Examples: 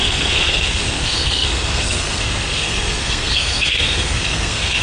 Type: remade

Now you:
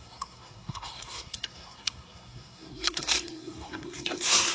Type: remade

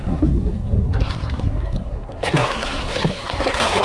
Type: remade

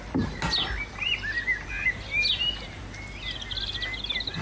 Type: recorded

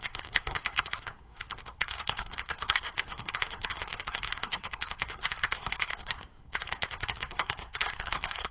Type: remade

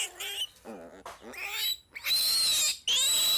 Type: recorded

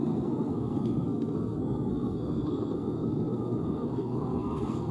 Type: remade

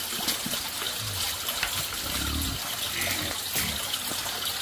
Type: recorded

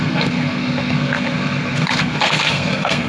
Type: remade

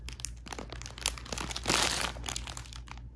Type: recorded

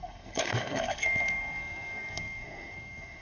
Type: remade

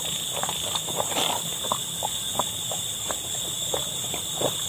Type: recorded